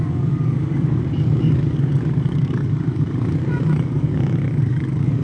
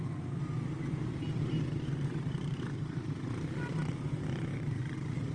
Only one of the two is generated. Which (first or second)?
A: first